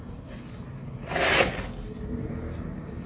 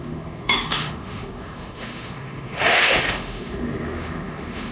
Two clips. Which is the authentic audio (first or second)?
first